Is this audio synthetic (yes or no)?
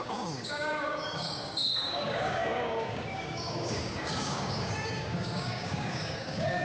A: yes